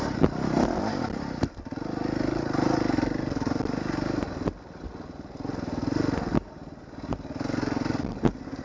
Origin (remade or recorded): recorded